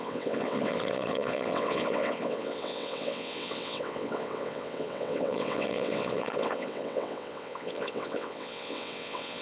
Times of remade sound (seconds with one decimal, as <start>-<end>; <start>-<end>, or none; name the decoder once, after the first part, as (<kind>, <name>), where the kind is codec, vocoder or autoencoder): 0.0-9.4 (vocoder, WaveNeXt)